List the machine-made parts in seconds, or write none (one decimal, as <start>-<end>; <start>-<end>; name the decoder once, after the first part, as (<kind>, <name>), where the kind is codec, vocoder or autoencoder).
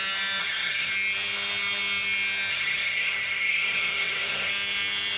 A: 0.4-0.9 (codec, SNAC); 2.5-4.5